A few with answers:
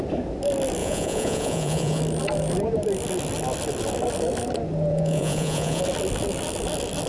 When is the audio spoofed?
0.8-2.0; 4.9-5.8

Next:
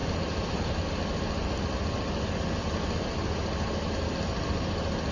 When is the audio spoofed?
none

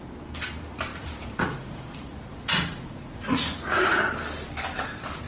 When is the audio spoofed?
0.9-4.1

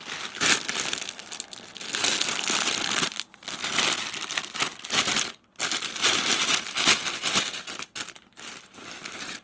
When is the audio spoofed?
none